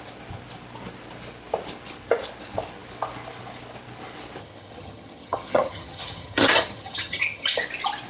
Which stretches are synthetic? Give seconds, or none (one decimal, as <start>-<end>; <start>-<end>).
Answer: 4.4-7.6

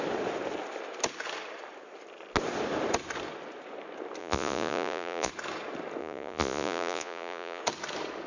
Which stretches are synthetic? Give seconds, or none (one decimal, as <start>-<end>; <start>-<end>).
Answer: 4.2-5.3; 6.0-7.6